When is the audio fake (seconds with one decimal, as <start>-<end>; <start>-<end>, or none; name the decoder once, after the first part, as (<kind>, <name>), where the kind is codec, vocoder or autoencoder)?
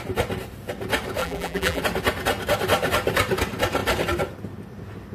1.2-1.8 (vocoder, BigVGAN v2)